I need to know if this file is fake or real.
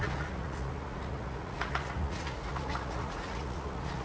fake